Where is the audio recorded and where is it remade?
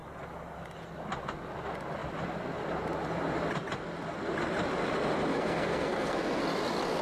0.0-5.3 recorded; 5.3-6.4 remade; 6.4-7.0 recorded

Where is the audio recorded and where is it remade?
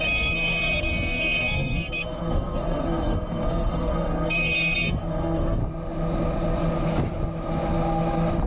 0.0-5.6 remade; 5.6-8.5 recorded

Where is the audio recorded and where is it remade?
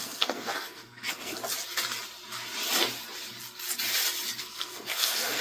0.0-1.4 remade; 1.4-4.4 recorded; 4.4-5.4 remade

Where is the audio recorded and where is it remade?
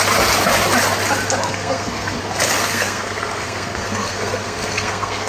0.0-1.5 recorded; 1.5-2.2 remade; 2.2-2.6 recorded; 2.6-5.3 remade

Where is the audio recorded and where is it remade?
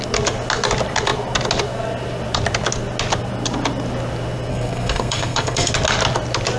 0.0-4.5 recorded; 4.5-5.7 remade; 5.7-6.6 recorded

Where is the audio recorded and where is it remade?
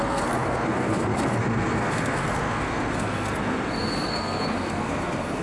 0.0-5.4 remade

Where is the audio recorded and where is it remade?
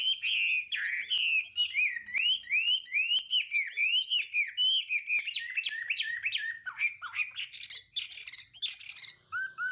0.0-9.7 recorded